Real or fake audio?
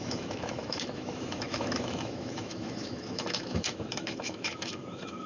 fake